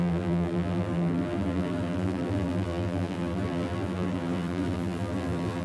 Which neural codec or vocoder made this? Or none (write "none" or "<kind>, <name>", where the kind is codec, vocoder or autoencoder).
vocoder, BigVGAN v2